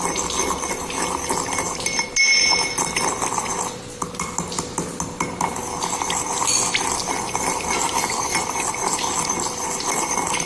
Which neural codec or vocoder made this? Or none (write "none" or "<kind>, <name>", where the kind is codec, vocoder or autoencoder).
none